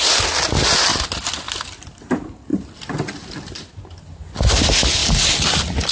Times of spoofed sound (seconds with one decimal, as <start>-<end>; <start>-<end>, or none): 0.9-2.0; 2.5-3.8; 5.0-5.9